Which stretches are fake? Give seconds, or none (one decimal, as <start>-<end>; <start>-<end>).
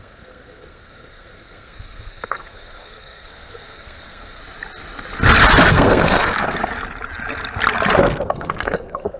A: 0.0-4.4; 5.7-6.7; 8.0-9.2